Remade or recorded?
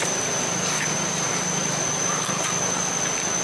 recorded